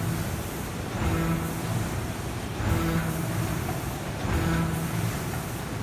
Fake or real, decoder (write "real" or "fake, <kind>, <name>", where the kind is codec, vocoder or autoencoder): real